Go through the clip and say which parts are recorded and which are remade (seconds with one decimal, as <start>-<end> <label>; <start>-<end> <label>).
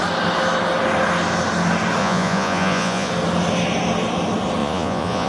0.0-2.0 recorded; 2.0-3.1 remade; 3.1-4.6 recorded; 4.6-5.3 remade